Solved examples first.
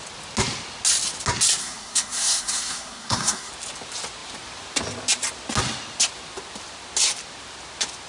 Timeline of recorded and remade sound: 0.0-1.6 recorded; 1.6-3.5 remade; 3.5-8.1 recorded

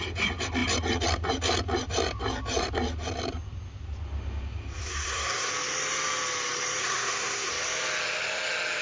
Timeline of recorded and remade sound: 0.0-4.8 recorded; 4.8-5.5 remade; 5.5-6.8 recorded; 6.8-7.5 remade; 7.5-8.8 recorded

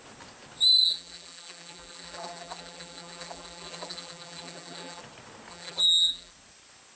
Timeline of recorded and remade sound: 0.0-0.8 recorded; 0.8-5.0 remade; 5.0-5.5 recorded; 5.5-6.3 remade; 6.3-7.0 recorded

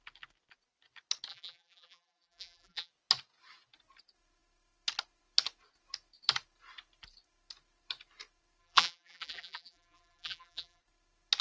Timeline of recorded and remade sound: 0.0-1.3 recorded; 1.3-2.9 remade; 2.9-8.6 recorded; 8.6-10.8 remade; 10.8-11.4 recorded

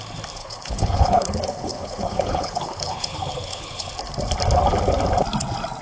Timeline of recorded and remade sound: 0.0-0.4 recorded; 0.4-3.9 remade; 3.9-5.8 recorded

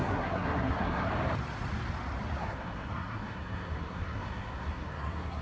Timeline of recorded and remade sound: 0.0-1.1 remade; 1.1-2.4 recorded; 2.4-5.4 remade

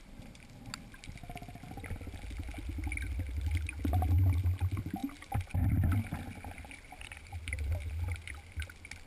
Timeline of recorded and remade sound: 0.0-9.1 recorded